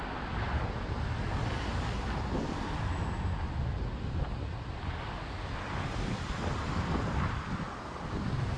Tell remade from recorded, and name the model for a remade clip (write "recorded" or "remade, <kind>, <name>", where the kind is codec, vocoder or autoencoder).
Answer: recorded